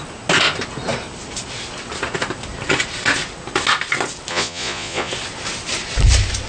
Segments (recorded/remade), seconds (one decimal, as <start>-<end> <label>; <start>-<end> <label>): 0.0-4.3 recorded; 4.3-5.1 remade; 5.1-6.5 recorded